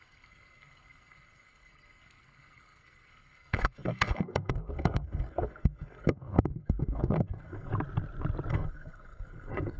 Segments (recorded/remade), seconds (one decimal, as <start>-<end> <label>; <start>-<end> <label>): 0.0-7.7 remade; 7.7-8.5 recorded; 8.5-9.8 remade